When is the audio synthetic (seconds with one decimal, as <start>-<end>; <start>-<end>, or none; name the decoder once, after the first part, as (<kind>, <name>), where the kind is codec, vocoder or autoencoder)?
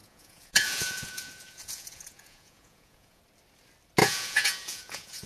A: 0.0-3.2 (vocoder, Vocos); 4.0-5.3